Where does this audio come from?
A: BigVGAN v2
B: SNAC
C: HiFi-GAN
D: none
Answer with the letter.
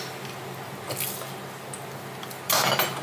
D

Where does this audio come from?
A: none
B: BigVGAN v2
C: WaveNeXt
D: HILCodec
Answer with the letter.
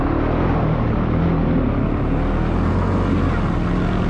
A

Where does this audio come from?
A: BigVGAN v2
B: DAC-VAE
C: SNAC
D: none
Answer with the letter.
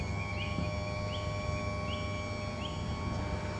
D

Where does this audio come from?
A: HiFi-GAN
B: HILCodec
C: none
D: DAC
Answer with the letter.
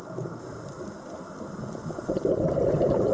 C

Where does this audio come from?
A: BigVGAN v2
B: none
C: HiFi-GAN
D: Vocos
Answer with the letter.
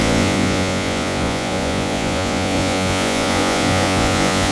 D